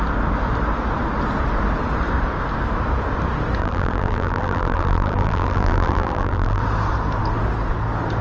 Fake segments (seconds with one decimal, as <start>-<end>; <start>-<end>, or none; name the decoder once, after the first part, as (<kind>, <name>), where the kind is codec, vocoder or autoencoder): 3.6-6.6 (vocoder, BigVGAN v2)